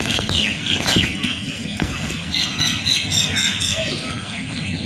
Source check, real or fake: fake